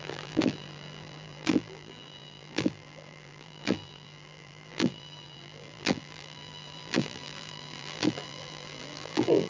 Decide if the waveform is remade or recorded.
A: remade